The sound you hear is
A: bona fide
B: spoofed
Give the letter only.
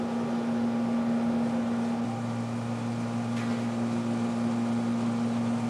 A